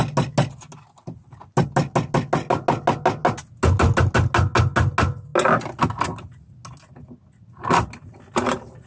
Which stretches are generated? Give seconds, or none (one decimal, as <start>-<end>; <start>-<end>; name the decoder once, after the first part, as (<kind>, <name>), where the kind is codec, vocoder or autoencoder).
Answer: none